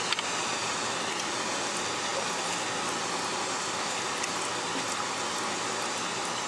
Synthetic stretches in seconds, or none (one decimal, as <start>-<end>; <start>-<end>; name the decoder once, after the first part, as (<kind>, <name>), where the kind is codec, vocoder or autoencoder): none